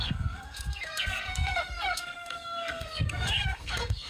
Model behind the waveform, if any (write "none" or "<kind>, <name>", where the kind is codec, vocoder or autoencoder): codec, SNAC